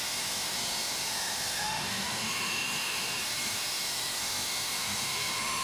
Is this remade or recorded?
remade